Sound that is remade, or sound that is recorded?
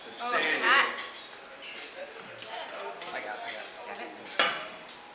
recorded